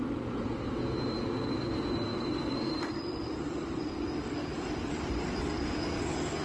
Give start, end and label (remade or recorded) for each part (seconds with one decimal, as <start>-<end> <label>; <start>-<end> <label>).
0.0-2.1 recorded; 2.1-5.9 remade; 5.9-6.4 recorded